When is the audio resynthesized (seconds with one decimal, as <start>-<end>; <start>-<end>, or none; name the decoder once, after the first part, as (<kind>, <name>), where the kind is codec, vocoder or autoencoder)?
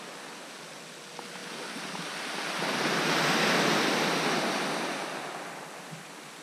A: none